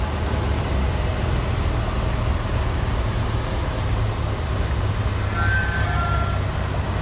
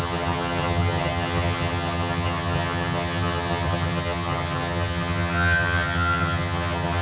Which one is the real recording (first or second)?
first